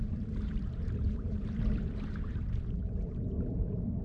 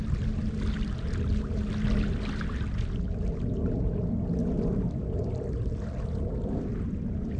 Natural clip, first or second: second